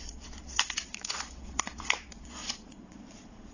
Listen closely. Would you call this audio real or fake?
fake